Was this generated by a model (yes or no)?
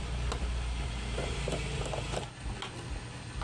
no